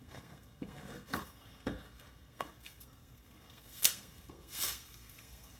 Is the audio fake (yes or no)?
yes